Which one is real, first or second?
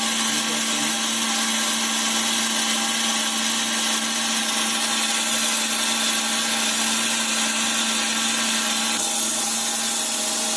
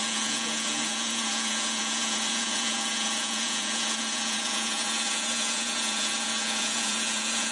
first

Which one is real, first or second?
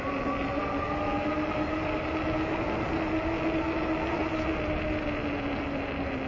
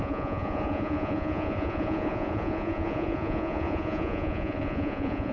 first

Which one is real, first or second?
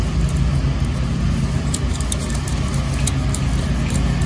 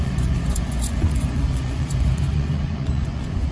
first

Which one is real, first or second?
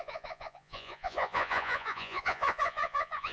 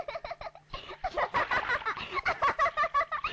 second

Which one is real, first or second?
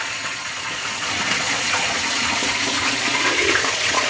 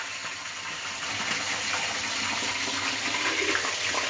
second